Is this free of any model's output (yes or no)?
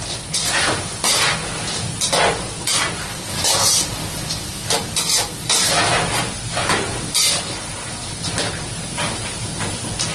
yes